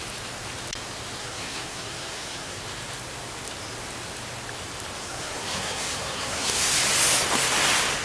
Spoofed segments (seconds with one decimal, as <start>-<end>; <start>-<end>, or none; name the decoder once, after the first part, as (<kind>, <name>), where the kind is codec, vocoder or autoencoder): 1.2-2.6 (codec, SNAC); 5.0-6.8